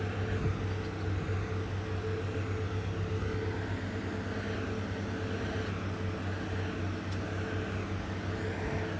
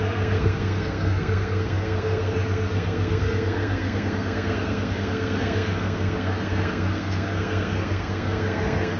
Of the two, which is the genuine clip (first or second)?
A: first